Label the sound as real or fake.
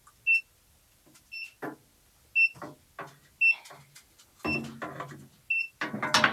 real